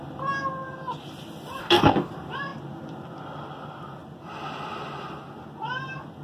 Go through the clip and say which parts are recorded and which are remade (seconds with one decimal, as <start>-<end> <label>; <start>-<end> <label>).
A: 0.0-1.6 recorded; 1.6-2.1 remade; 2.1-6.2 recorded